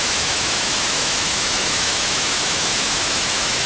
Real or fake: fake